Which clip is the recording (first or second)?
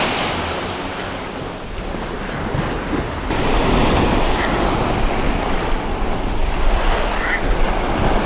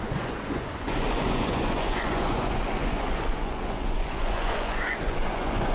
first